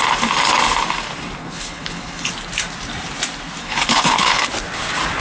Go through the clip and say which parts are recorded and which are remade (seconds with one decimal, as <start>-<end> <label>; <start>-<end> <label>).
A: 0.0-1.4 recorded; 1.4-2.3 remade; 2.3-3.6 recorded; 3.6-4.5 remade; 4.5-5.2 recorded